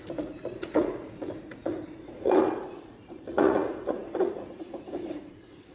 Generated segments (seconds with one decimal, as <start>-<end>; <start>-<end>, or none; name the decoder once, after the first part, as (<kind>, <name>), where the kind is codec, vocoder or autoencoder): 0.0-5.7 (vocoder, Vocos)